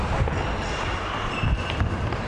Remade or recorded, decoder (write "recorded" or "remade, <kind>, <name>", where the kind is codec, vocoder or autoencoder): recorded